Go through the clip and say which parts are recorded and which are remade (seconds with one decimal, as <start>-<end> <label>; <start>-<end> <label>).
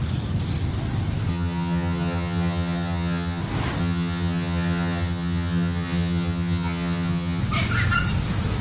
0.0-1.3 recorded; 1.3-3.4 remade; 3.4-3.8 recorded; 3.8-7.4 remade; 7.4-8.6 recorded